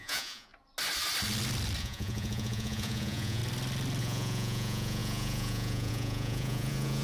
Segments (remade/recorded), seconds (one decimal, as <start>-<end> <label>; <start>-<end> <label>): 0.0-0.5 remade; 0.5-1.8 recorded; 1.8-3.4 remade; 3.4-4.0 recorded; 4.0-7.0 remade